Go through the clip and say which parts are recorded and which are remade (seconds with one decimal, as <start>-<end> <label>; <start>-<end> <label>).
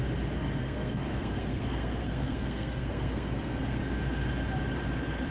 0.0-0.6 recorded; 0.6-3.8 remade; 3.8-5.3 recorded